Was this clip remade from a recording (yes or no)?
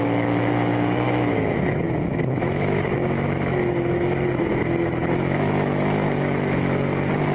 yes